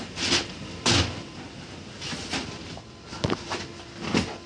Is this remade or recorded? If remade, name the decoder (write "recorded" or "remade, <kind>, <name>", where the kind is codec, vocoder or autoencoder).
recorded